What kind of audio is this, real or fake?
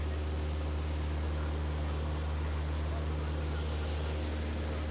real